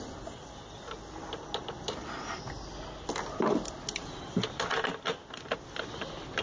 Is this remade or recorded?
recorded